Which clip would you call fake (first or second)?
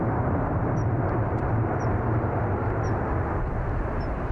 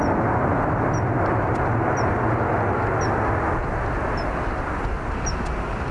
first